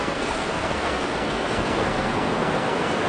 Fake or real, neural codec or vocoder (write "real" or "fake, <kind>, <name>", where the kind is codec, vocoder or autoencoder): fake, codec, SNAC